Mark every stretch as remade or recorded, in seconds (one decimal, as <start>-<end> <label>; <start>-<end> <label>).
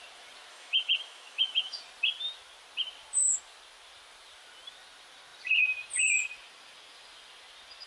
0.0-0.5 recorded; 0.5-1.8 remade; 1.8-7.9 recorded